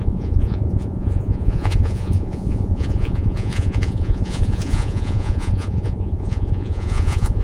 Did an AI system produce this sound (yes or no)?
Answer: yes